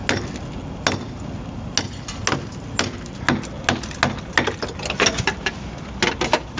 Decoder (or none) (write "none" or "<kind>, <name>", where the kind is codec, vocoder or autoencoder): none